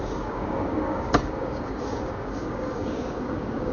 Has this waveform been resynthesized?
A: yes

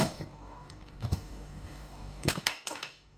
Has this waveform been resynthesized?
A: yes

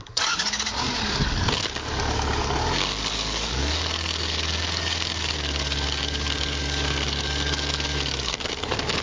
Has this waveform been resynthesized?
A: yes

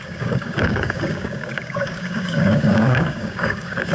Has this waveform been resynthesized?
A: yes